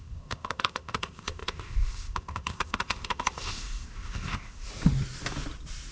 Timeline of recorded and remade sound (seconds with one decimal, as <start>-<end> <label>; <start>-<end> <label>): 0.0-4.7 remade; 4.7-5.9 recorded